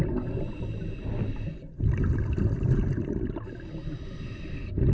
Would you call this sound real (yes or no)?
yes